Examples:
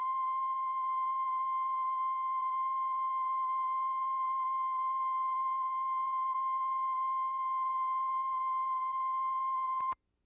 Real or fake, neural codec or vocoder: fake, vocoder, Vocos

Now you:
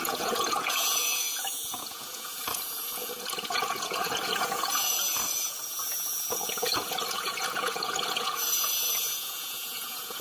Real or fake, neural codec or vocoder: fake, vocoder, Vocos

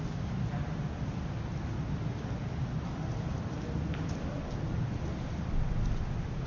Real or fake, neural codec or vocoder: real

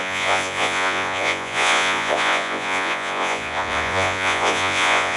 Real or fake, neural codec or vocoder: fake, vocoder, Vocos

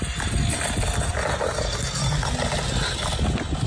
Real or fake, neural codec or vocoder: real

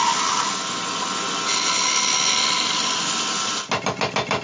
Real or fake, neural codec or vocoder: real